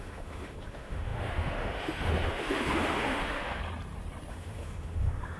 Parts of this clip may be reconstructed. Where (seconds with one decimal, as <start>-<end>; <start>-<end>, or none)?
0.0-3.6; 4.3-5.4

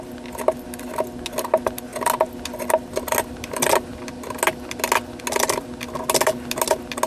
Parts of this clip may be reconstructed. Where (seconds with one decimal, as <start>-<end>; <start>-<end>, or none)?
none

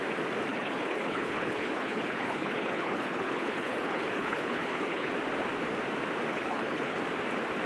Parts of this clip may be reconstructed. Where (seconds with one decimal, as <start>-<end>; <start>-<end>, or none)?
0.5-5.1; 6.3-7.0

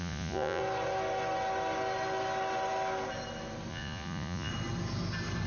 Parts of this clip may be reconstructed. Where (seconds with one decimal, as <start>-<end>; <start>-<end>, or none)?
0.0-0.6; 3.7-4.5

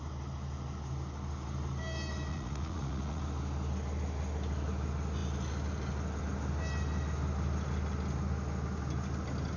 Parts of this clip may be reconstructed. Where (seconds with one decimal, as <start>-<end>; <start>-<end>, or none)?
2.3-3.2